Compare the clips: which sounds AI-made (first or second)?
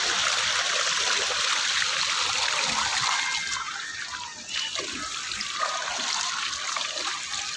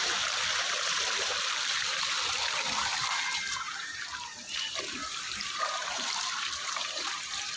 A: second